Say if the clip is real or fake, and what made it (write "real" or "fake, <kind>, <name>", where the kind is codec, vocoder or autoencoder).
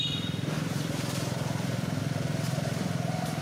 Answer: fake, vocoder, BigVGAN v2